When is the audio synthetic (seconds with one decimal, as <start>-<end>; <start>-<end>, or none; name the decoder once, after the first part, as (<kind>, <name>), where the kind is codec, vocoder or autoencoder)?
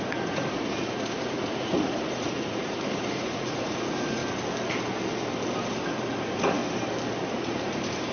0.0-4.2 (vocoder, Vocos); 5.7-6.6; 7.3-8.1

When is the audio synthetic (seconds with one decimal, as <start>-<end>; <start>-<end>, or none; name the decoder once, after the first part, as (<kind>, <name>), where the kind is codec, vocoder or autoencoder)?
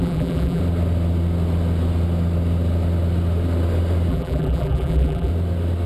0.0-0.6 (vocoder, BigVGAN v2); 4.1-5.3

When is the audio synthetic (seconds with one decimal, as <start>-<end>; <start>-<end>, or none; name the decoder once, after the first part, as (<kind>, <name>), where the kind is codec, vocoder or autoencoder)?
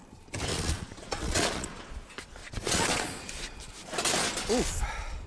0.5-1.9 (vocoder, Vocos); 2.4-3.2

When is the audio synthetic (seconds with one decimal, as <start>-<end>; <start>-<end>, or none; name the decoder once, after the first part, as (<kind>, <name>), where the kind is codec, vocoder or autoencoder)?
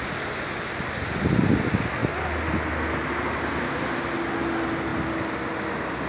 none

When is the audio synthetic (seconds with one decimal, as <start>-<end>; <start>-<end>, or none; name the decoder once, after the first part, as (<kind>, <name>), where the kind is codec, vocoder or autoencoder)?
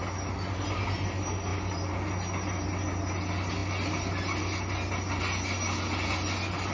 none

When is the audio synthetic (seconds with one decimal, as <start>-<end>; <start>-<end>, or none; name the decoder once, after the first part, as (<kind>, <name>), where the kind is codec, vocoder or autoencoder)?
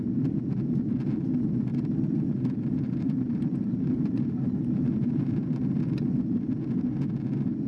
1.7-5.6 (vocoder, BigVGAN v2)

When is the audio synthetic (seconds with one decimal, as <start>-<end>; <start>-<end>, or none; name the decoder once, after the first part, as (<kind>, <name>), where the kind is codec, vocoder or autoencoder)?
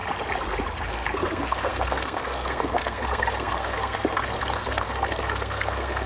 0.9-6.1 (codec, SNAC)